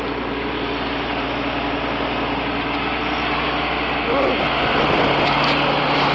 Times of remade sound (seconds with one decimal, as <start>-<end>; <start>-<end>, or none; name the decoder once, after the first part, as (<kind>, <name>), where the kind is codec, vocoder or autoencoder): none